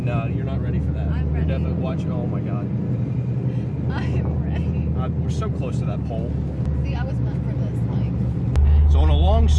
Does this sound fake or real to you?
real